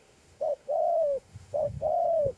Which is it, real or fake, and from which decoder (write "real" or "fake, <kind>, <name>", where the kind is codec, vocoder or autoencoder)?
fake, autoencoder, DAC-VAE